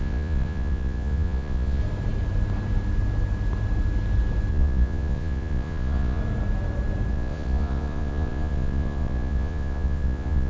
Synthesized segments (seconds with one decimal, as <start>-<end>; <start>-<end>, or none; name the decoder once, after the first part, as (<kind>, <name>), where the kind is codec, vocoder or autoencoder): 0.0-1.8 (vocoder, Vocos); 4.5-6.2; 7.1-10.5

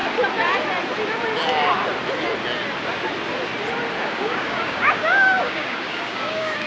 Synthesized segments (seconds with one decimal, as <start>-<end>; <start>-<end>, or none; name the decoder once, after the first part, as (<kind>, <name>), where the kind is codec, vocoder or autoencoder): 4.0-6.7 (codec, DAC)

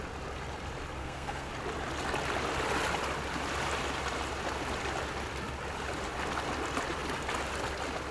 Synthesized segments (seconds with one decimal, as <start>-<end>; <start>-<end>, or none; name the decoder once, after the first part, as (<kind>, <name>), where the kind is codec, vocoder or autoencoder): 1.0-1.5 (codec, SNAC)

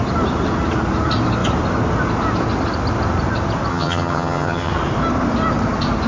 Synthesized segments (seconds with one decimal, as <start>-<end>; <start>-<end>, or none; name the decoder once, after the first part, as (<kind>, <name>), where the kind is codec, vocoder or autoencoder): 3.7-4.7 (vocoder, HiFi-GAN)

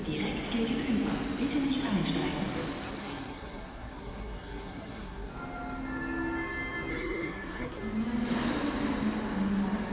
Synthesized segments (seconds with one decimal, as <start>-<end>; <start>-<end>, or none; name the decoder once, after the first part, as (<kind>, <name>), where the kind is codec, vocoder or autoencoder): 3.0-5.3 (codec, SNAC); 6.9-7.8

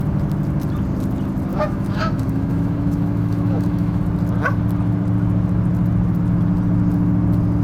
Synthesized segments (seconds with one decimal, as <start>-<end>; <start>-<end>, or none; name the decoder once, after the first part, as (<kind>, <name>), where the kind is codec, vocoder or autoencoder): 1.5-4.0 (autoencoder, DAC-VAE)

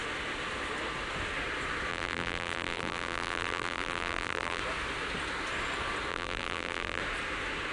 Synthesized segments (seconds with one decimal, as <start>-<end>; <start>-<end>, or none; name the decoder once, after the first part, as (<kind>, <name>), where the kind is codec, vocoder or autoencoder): 1.9-4.6 (vocoder, BigVGAN v2); 6.1-7.0

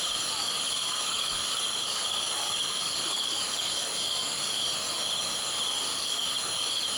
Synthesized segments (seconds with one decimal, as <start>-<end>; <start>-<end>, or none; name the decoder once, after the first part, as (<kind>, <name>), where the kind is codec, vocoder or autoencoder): 0.4-4.6 (codec, DAC); 5.9-7.0